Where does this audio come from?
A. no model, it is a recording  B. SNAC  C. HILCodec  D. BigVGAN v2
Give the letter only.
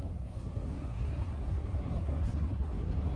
B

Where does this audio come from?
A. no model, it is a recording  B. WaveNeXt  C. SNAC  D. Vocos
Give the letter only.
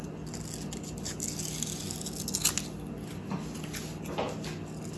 A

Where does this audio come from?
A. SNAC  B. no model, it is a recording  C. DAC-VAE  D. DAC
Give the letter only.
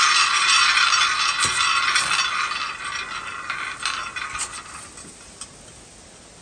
B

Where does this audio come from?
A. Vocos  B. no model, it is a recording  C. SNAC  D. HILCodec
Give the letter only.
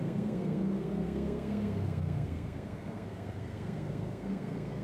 C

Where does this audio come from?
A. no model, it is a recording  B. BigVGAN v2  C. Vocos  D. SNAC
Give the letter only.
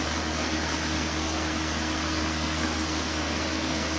D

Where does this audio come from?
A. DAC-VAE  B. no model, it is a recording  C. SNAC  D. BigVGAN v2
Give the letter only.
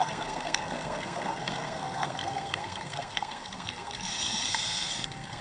C